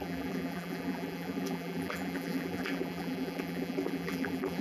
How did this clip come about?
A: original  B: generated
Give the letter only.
B